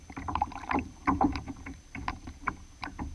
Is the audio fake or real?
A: fake